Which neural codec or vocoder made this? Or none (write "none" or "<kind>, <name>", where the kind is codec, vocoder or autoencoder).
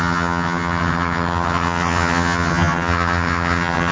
vocoder, HiFi-GAN